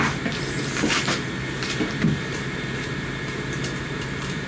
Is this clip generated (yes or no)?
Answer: yes